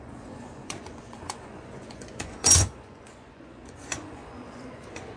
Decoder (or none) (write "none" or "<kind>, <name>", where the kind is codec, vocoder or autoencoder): vocoder, Vocos